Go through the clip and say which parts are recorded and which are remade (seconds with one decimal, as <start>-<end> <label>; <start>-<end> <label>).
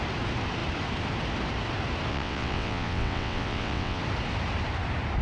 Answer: 0.0-2.1 recorded; 2.1-4.0 remade; 4.0-5.2 recorded